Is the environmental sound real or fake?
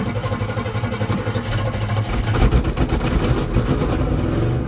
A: real